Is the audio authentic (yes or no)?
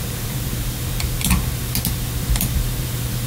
no